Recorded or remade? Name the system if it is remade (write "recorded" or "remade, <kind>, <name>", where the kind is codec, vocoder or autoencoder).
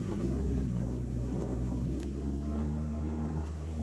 remade, codec, SNAC